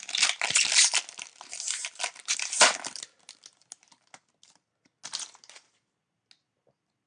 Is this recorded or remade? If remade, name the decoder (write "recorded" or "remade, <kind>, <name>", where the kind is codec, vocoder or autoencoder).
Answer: recorded